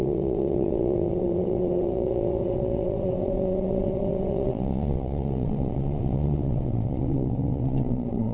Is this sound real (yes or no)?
no